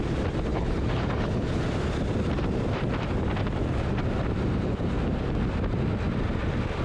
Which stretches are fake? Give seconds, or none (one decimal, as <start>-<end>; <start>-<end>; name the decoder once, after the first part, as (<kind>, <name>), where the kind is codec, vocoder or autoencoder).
0.5-1.6 (codec, HILCodec)